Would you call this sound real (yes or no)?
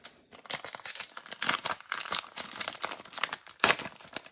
yes